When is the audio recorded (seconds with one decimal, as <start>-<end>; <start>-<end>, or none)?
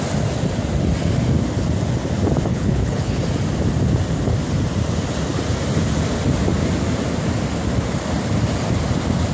0.0-2.5; 3.2-9.3